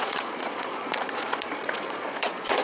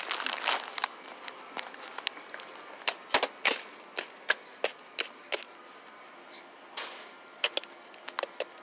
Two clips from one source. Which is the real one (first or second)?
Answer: second